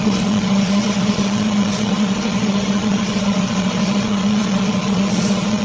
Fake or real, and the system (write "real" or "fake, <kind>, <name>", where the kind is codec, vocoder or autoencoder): fake, vocoder, Vocos